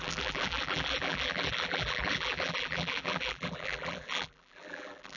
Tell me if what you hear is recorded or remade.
remade